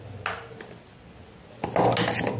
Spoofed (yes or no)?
no